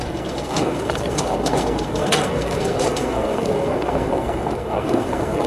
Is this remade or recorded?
remade